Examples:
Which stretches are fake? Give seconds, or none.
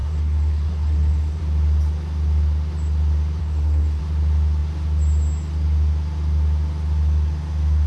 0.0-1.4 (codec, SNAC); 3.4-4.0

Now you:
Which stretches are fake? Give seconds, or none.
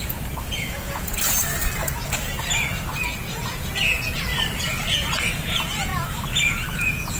0.0-1.6 (vocoder, Vocos); 3.3-4.3; 4.9-5.9; 6.7-7.2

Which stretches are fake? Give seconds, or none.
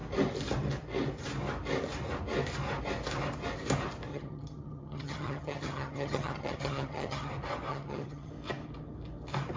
4.1-7.3 (vocoder, HiFi-GAN); 7.7-8.3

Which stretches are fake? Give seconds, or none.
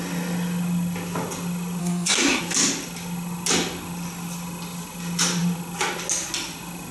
1.8-2.4 (codec, SNAC)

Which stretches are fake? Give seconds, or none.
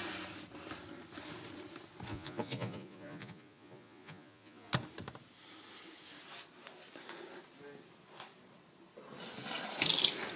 2.1-4.7 (vocoder, Vocos)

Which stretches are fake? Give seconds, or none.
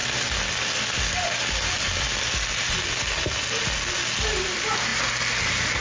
none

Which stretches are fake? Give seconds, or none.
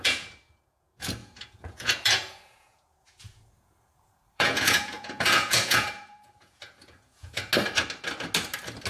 0.0-7.5 (vocoder, Vocos)